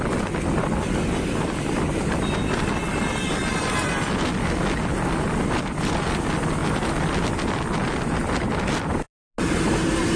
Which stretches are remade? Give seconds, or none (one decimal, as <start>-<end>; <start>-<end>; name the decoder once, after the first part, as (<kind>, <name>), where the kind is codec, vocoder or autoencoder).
none

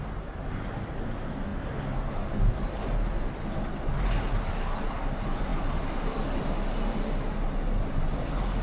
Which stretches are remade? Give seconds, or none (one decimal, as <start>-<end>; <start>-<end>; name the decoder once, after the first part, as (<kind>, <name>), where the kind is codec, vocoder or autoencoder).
none

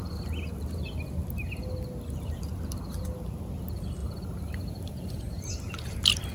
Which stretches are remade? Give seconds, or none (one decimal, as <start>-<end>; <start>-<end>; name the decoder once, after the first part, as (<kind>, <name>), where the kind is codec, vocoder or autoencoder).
4.0-5.7 (vocoder, BigVGAN v2)

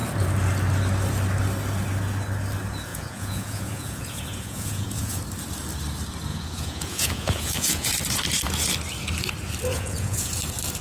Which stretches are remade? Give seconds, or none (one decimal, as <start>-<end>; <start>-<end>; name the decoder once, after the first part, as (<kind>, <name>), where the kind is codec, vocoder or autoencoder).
2.9-5.2 (vocoder, Vocos); 6.3-7.9; 9.7-10.4

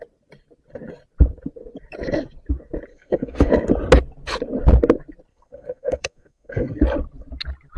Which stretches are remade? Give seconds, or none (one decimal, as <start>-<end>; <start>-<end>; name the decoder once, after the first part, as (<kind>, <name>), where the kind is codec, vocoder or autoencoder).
2.9-3.5 (codec, SNAC); 5.3-6.8

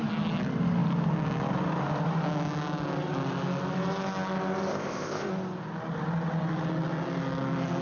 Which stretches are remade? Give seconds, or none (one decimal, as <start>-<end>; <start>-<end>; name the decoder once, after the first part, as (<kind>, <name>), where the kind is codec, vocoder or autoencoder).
4.7-5.3 (codec, ZipCodec)